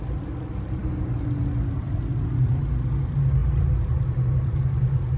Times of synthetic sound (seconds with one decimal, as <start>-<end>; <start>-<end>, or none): none